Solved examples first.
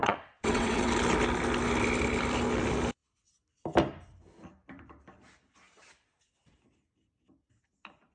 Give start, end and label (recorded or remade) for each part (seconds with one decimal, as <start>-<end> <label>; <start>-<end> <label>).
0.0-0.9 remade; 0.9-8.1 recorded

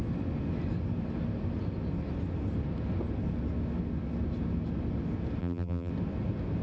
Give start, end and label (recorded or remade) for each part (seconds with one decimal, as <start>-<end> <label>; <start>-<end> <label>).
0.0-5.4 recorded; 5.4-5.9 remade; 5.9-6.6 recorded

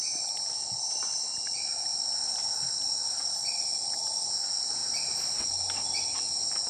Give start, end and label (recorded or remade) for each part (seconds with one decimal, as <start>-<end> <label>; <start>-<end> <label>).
0.0-1.9 recorded; 1.9-4.3 remade; 4.3-4.8 recorded; 4.8-5.4 remade; 5.4-6.7 recorded

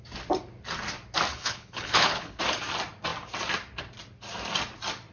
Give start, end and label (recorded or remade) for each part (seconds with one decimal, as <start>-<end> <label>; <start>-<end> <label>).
0.0-1.3 recorded; 1.3-2.4 remade; 2.4-5.1 recorded

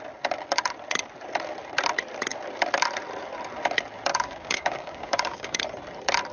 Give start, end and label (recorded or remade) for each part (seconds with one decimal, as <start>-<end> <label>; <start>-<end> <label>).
0.0-4.1 recorded; 4.1-5.6 remade; 5.6-6.3 recorded

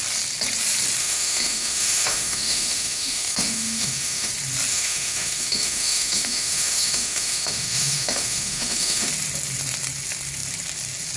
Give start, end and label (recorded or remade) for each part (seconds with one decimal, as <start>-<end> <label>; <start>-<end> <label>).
0.0-1.0 recorded; 1.0-4.3 remade; 4.3-4.7 recorded; 4.7-9.1 remade; 9.1-11.2 recorded

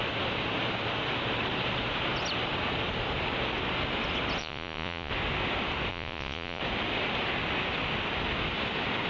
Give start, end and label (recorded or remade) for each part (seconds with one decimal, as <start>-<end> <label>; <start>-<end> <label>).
0.0-4.4 recorded; 4.4-5.1 remade; 5.1-5.9 recorded; 5.9-6.6 remade; 6.6-9.1 recorded

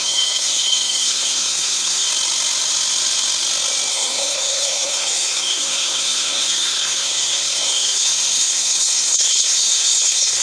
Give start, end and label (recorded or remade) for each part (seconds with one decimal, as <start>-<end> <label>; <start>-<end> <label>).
0.0-2.1 remade; 2.1-3.9 recorded; 3.9-10.4 remade